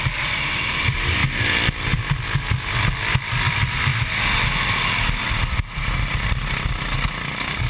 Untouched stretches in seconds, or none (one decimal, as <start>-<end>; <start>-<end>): 1.2-2.5; 3.9-7.1